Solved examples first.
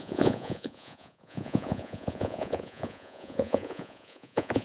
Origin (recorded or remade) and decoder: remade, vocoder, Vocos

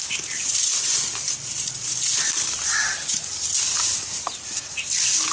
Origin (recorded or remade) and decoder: remade, vocoder, BigVGAN v2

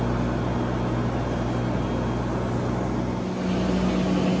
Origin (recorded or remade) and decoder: recorded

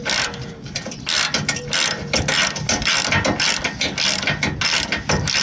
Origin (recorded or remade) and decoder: recorded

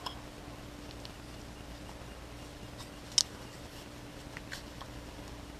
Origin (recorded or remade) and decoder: recorded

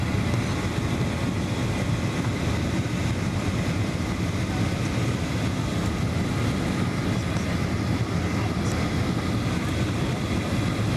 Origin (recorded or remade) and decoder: recorded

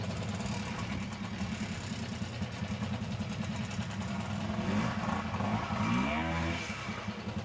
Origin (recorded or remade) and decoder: recorded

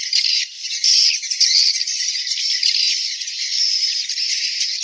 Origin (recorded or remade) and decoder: remade, vocoder, BigVGAN v2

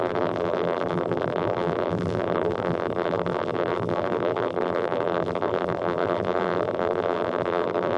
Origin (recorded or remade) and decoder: remade, vocoder, BigVGAN v2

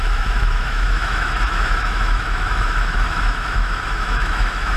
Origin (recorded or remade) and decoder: remade, autoencoder, DAC-VAE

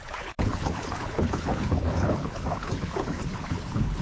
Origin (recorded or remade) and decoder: remade, codec, HILCodec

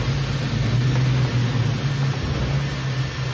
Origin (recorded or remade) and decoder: recorded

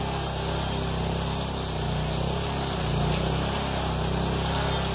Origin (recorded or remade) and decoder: recorded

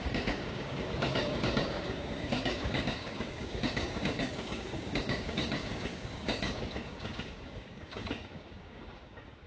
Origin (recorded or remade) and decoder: remade, codec, DAC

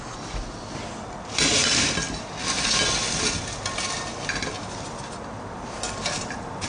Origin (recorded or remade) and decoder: recorded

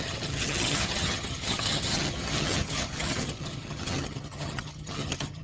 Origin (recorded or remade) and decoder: remade, vocoder, HiFi-GAN